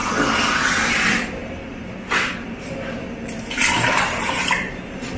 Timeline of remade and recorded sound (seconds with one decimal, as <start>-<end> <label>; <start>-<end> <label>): 0.0-5.2 recorded